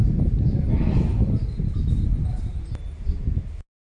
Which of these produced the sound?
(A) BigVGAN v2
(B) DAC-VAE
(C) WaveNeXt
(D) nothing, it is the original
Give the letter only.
D